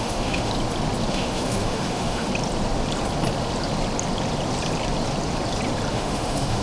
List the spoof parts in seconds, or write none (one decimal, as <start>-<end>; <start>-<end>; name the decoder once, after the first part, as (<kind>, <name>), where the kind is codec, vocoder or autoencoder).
0.0-0.5 (autoencoder, DAC-VAE); 1.1-2.3; 5.9-6.6